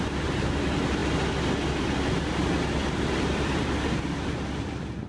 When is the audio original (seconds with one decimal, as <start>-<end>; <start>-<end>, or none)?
0.0-2.8; 3.7-5.1